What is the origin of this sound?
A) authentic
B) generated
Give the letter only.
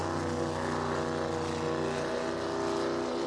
A